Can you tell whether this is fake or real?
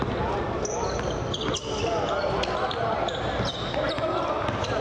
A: real